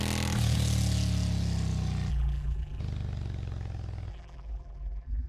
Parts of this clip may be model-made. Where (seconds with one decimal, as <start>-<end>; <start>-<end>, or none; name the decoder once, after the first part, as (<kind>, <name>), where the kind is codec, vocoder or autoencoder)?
2.1-2.8 (vocoder, BigVGAN v2); 4.1-5.3